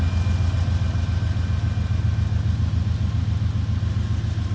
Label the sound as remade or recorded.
recorded